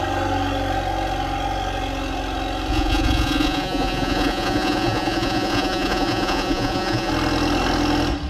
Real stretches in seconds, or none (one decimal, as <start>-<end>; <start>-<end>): 0.0-2.7; 7.1-8.3